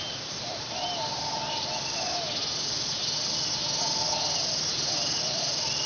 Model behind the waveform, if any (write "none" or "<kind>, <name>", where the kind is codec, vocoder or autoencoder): none